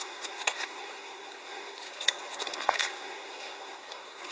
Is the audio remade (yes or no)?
yes